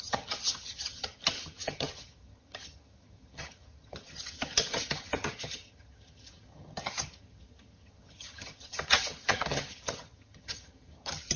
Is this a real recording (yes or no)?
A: no